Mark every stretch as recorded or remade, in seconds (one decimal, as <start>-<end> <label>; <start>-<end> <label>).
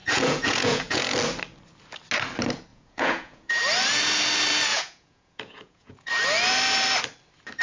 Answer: 0.0-1.0 remade; 1.0-2.7 recorded; 2.7-3.6 remade; 3.6-4.7 recorded; 4.7-6.1 remade; 6.1-7.6 recorded